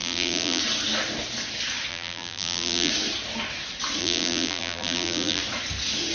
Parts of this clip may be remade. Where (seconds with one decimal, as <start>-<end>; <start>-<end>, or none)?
0.0-0.6; 1.9-2.9; 4.0-5.4